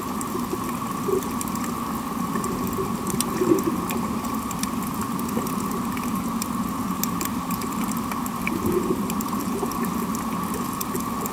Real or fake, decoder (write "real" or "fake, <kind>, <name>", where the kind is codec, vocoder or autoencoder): real